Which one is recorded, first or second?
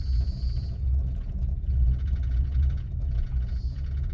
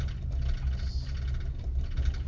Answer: second